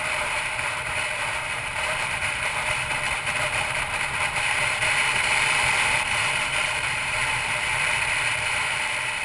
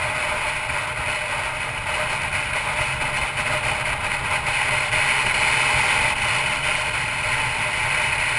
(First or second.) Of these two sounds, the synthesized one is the first